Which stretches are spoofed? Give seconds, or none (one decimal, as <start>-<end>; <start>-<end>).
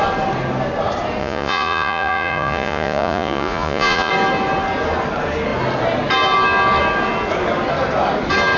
1.2-4.1